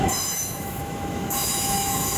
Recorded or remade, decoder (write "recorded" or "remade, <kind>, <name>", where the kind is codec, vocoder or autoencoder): remade, autoencoder, DAC-VAE